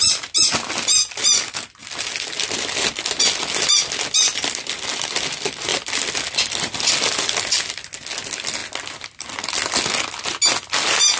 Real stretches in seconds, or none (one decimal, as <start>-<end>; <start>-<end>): 0.0-11.2